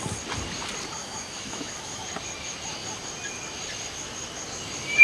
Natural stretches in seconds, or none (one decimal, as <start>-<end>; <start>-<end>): 0.0-1.0; 2.0-5.0